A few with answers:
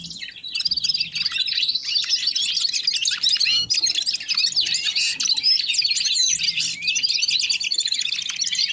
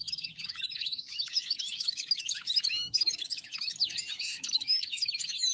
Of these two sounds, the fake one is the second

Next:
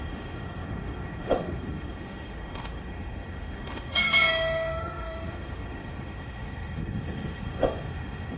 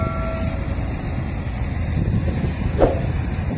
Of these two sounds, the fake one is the first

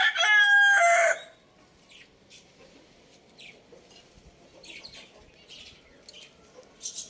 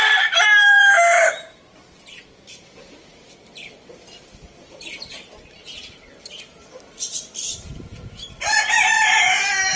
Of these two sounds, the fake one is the second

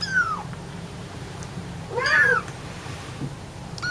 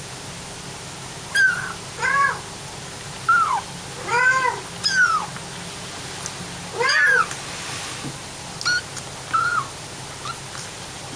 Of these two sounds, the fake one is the first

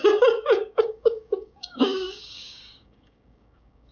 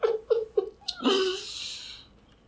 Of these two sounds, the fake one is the first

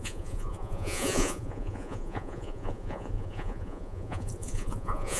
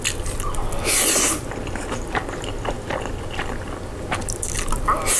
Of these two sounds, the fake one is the first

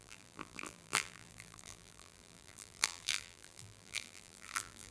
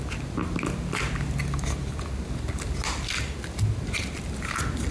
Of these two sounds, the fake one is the first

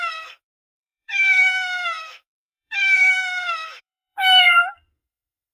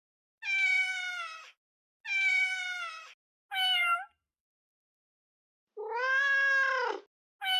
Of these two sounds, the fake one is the first